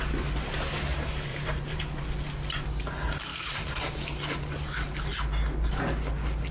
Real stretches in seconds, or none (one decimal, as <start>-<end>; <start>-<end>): 0.0-1.3; 1.9-3.3; 3.8-6.5